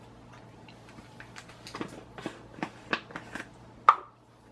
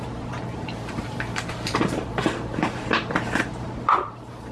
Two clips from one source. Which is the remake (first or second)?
second